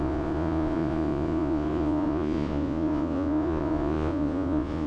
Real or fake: fake